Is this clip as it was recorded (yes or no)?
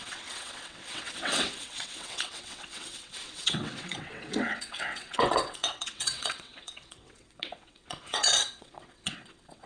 no